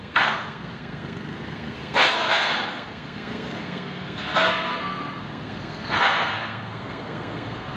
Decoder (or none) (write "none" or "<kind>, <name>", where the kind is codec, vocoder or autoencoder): codec, SNAC